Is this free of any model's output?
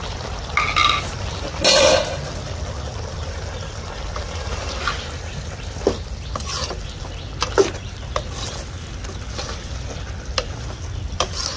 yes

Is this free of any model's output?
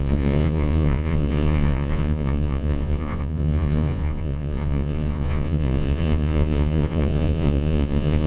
no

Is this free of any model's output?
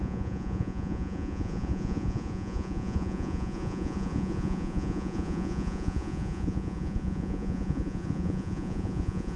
no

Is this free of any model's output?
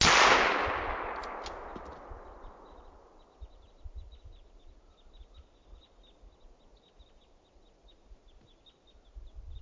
yes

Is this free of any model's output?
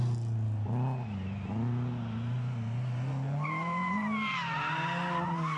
yes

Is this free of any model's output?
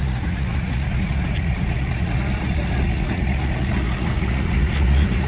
no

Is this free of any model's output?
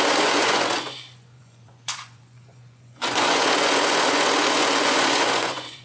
no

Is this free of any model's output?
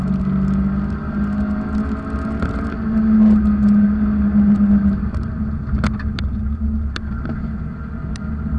yes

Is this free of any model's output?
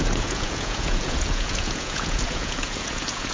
no